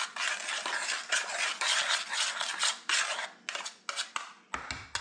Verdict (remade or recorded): recorded